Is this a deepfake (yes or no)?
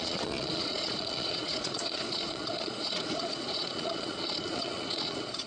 yes